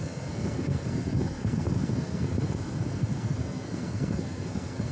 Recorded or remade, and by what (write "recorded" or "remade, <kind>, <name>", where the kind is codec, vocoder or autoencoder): remade, codec, SNAC